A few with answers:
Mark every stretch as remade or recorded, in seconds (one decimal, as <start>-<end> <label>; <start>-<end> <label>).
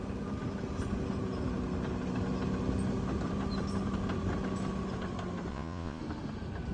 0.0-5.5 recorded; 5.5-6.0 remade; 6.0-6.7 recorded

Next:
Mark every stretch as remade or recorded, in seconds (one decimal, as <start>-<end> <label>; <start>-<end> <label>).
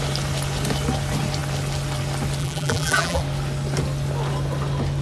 0.0-2.4 recorded; 2.4-3.2 remade; 3.2-5.0 recorded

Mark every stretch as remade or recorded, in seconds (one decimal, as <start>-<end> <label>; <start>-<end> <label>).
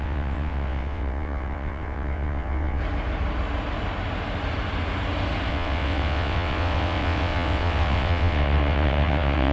0.0-2.8 remade; 2.8-5.5 recorded; 5.5-9.5 remade